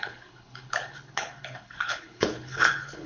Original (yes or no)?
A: no